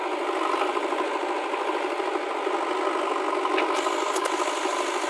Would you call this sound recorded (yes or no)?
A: yes